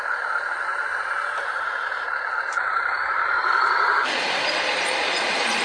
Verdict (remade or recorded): remade